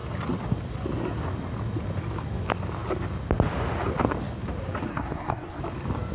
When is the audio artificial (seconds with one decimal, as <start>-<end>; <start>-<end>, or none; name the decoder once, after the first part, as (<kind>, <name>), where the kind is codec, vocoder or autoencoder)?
4.9-5.6 (codec, SNAC)